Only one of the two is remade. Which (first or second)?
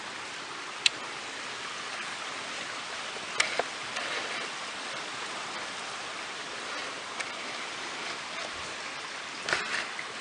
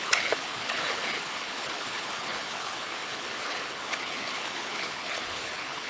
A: second